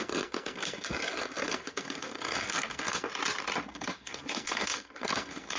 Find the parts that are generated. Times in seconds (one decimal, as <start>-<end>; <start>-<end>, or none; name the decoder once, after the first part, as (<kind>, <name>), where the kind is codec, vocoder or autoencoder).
0.0-3.1 (codec, SNAC); 3.7-5.6